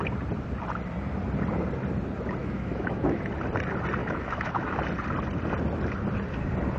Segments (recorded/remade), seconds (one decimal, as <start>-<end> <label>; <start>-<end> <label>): 0.0-2.4 recorded; 2.4-3.2 remade; 3.2-4.0 recorded; 4.0-4.8 remade; 4.8-6.8 recorded